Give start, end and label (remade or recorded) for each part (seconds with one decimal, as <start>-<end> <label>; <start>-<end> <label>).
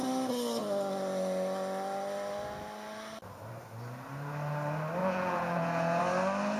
0.0-5.0 recorded; 5.0-6.0 remade; 6.0-6.6 recorded